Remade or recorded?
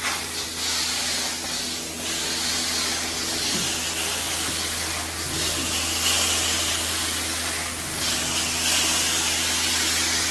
recorded